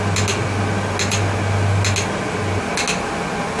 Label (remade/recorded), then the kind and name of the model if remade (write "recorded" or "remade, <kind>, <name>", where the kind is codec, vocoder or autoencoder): recorded